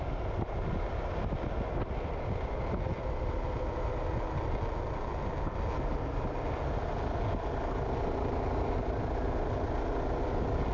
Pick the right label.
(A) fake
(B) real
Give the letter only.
B